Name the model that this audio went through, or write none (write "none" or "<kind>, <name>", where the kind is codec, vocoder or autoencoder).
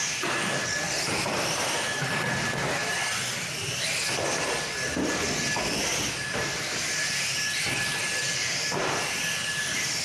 none